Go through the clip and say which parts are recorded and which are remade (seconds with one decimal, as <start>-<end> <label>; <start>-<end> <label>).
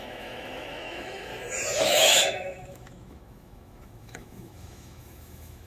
0.0-1.3 remade; 1.3-1.8 recorded; 1.8-5.7 remade